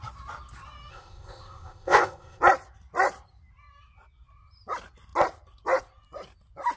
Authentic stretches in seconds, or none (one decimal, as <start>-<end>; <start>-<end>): 0.0-0.9; 2.4-6.8